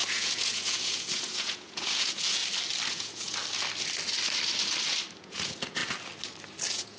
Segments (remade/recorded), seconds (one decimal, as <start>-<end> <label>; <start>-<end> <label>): 0.0-2.4 remade; 2.4-2.9 recorded; 2.9-3.4 remade; 3.4-5.2 recorded; 5.2-5.8 remade; 5.8-6.6 recorded; 6.6-7.0 remade